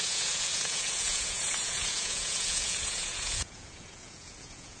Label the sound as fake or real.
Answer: fake